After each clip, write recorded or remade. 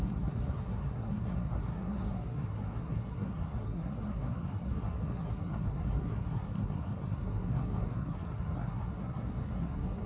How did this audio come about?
remade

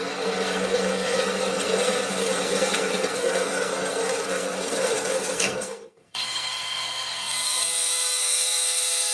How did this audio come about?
remade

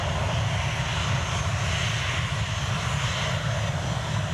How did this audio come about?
recorded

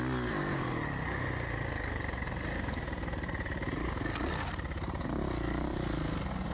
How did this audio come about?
recorded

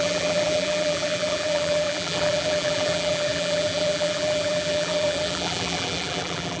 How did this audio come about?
remade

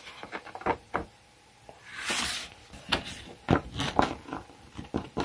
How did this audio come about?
recorded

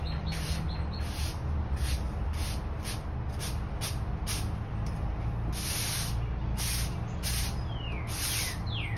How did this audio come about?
recorded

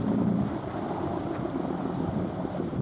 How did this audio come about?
recorded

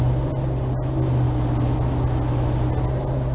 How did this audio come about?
recorded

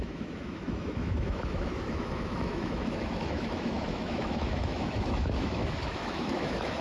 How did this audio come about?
remade